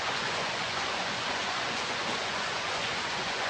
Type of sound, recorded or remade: remade